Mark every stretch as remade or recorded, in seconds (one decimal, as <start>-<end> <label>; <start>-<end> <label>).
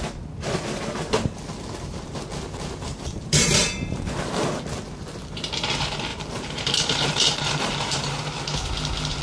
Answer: 0.0-2.9 recorded; 2.9-4.0 remade; 4.0-6.1 recorded; 6.1-8.1 remade; 8.1-9.2 recorded